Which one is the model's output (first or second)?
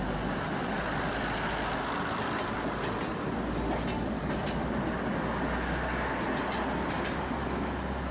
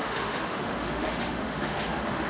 second